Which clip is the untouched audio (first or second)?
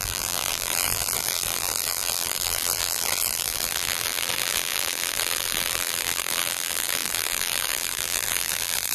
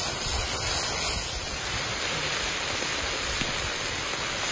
second